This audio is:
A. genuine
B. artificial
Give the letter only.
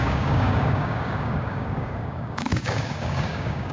B